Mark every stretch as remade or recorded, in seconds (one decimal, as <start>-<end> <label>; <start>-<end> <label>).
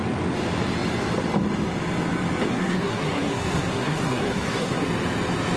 0.0-2.5 recorded; 2.5-4.8 remade; 4.8-5.6 recorded